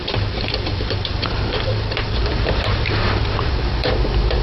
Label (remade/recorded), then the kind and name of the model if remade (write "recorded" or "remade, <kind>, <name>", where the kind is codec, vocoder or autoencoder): remade, vocoder, BigVGAN v2